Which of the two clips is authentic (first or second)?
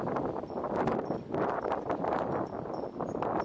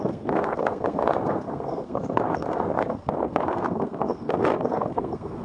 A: first